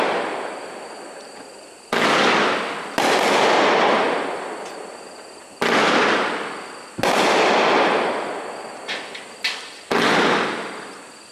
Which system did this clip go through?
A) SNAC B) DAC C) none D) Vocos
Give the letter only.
C